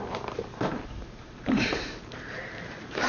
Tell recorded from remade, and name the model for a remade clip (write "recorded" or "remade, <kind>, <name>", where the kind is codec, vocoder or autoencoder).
remade, vocoder, BigVGAN v2